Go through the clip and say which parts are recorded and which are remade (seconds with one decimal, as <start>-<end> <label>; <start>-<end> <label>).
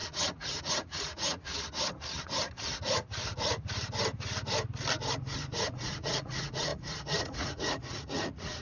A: 0.0-1.5 remade; 1.5-5.1 recorded; 5.1-8.6 remade